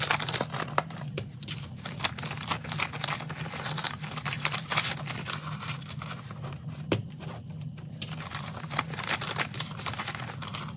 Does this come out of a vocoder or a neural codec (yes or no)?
no